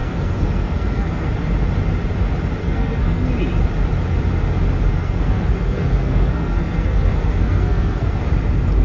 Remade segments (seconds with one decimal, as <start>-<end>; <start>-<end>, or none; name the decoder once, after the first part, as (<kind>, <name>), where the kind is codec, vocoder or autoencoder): 0.0-1.3 (codec, SNAC); 2.6-3.3; 4.9-8.2